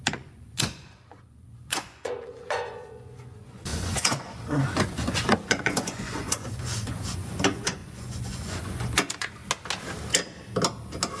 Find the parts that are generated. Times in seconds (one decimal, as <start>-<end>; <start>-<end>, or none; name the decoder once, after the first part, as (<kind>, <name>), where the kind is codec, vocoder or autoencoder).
0.0-9.4 (vocoder, Vocos)